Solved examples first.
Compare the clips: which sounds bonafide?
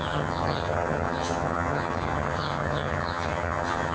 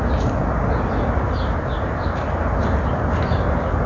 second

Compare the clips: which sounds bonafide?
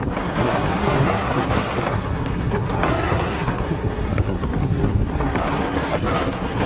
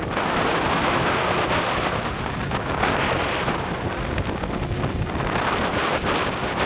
second